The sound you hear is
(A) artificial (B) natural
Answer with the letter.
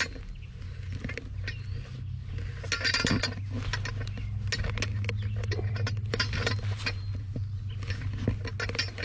B